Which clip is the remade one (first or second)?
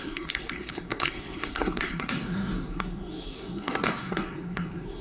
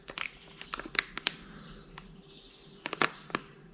first